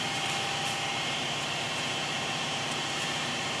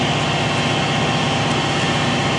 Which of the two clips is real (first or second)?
second